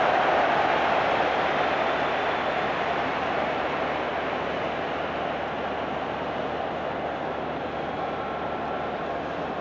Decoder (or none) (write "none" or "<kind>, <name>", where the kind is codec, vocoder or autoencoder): none